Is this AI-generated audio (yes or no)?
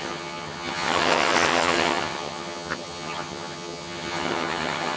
yes